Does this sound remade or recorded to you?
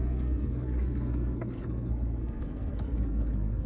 remade